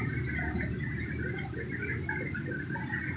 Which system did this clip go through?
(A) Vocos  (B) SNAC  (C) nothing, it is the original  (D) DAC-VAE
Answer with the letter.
C